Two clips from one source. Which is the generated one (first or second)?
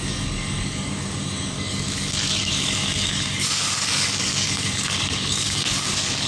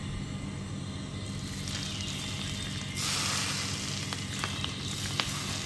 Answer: first